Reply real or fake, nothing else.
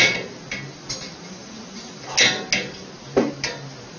real